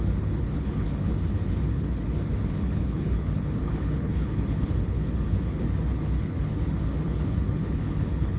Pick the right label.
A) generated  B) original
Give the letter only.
A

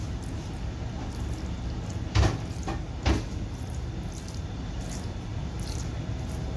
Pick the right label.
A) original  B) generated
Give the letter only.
A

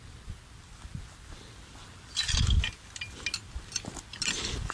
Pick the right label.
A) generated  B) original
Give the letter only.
B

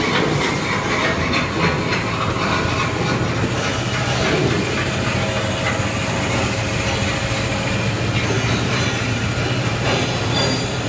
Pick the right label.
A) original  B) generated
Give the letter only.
A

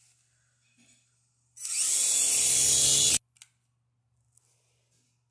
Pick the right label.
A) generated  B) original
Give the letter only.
B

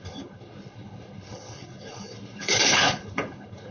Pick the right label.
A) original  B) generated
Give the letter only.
B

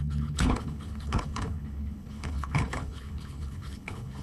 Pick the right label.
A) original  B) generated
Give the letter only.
B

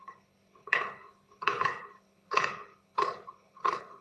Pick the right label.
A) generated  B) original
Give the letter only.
A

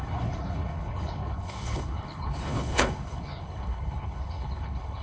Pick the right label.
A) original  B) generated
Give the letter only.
B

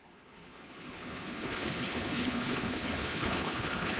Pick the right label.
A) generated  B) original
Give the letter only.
A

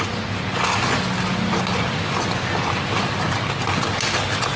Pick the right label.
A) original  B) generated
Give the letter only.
A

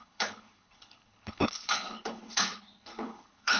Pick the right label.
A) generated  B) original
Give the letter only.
A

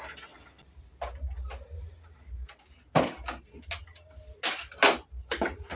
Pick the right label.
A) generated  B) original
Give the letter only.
B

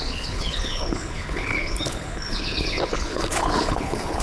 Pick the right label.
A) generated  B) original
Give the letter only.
A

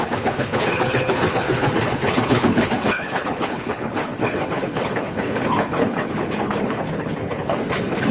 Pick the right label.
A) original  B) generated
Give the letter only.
B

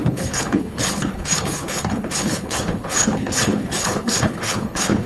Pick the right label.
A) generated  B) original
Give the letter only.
A